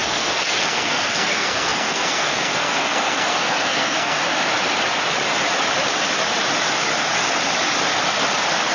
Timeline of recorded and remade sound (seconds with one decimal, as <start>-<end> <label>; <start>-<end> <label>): 0.0-4.2 remade; 4.2-8.7 recorded